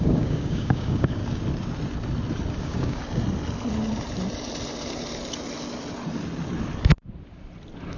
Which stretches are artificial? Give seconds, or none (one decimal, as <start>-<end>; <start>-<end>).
0.0-1.2; 2.6-3.0